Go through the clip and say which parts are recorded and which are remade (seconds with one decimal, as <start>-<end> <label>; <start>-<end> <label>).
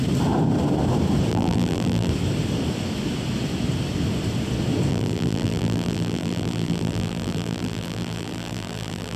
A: 0.0-1.3 recorded; 1.3-2.1 remade; 2.1-4.9 recorded; 4.9-9.2 remade